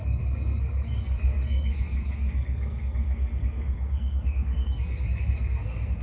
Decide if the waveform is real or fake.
fake